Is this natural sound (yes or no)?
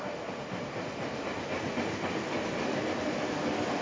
yes